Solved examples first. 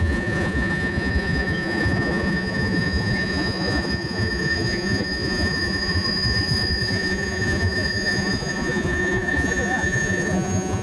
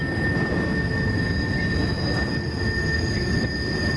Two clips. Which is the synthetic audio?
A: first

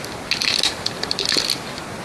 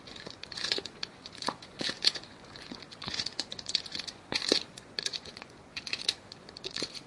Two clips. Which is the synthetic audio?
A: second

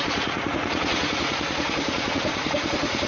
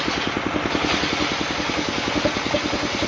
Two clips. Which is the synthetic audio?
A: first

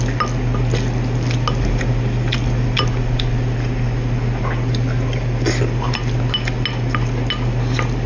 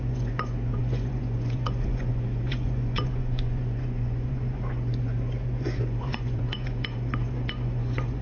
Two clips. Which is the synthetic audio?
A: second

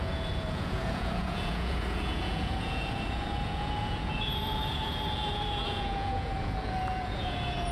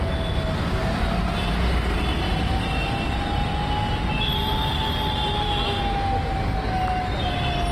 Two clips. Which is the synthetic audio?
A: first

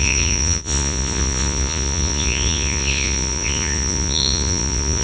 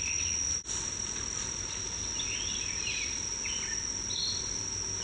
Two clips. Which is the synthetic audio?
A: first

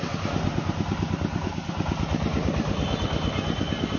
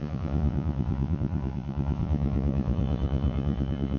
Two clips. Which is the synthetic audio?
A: second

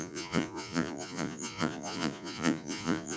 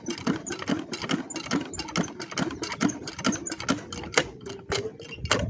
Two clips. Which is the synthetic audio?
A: first